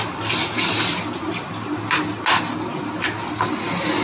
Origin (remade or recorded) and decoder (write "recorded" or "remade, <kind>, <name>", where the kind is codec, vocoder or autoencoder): recorded